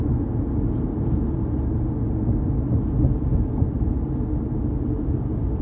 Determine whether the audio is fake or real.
real